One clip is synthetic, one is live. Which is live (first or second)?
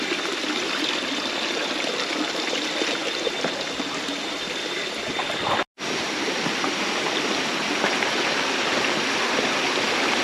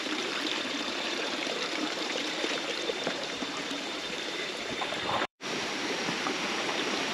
first